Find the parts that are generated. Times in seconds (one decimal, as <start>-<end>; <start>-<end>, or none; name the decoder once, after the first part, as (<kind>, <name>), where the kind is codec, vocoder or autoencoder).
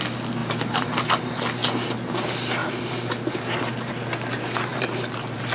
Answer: 0.4-1.0 (vocoder, BigVGAN v2); 2.6-3.9; 4.7-5.5